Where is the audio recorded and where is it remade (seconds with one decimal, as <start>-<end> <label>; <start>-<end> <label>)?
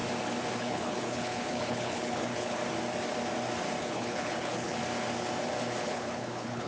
0.0-0.6 recorded; 0.6-2.6 remade; 2.6-3.8 recorded; 3.8-4.8 remade; 4.8-5.8 recorded; 5.8-6.7 remade